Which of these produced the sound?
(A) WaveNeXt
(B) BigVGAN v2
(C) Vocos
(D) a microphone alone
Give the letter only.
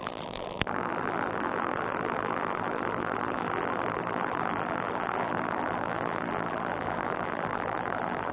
B